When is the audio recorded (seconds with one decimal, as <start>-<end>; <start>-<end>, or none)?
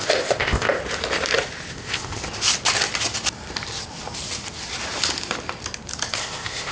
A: 0.8-1.7; 2.2-6.2